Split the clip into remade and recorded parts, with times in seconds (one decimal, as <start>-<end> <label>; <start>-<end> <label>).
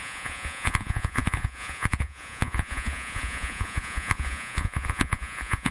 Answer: 0.0-5.7 remade